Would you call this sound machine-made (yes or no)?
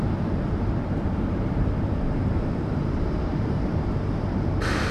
yes